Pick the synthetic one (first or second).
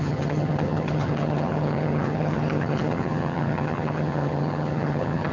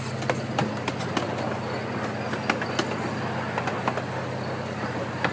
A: first